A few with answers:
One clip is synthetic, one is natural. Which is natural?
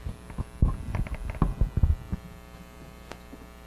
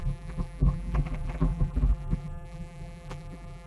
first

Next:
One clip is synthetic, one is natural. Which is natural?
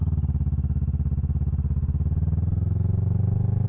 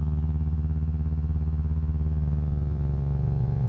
first